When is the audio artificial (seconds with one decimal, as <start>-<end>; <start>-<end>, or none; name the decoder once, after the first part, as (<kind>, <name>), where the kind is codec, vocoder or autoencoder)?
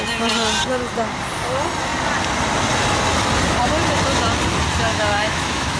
4.9-5.8 (autoencoder, DAC-VAE)